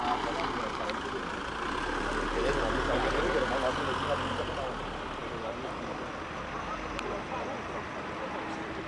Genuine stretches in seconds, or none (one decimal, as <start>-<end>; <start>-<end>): 0.0-8.9

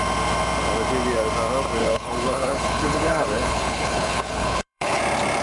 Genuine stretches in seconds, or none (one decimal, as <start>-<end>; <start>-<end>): 0.0-1.8; 5.0-5.4

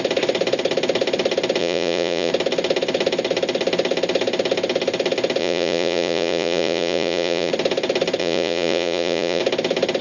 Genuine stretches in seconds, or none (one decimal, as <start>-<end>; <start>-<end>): 0.0-1.6; 2.3-5.4; 7.5-8.2; 9.4-10.0

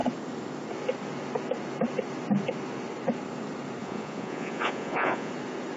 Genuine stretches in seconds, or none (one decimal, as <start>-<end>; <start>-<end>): 0.0-3.8; 5.3-5.8

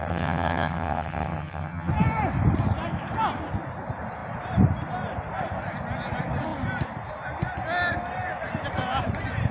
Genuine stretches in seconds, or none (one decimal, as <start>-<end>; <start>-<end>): 1.9-9.5

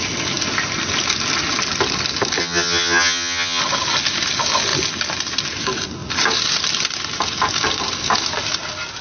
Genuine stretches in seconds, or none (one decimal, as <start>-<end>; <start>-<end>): 0.0-2.4; 3.6-9.0

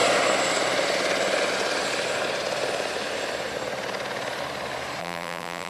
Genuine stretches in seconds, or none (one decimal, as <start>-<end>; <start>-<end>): 0.0-5.0